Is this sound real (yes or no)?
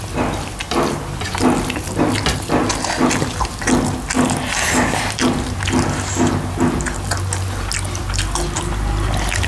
yes